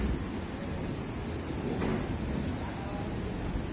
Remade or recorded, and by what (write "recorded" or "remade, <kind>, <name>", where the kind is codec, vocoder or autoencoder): recorded